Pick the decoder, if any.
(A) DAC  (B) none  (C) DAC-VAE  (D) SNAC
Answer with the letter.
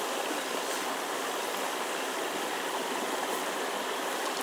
B